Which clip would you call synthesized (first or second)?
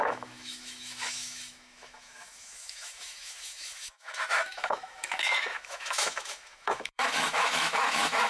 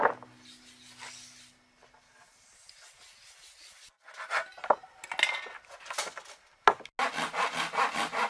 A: first